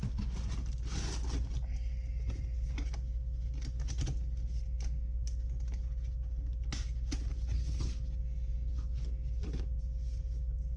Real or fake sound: real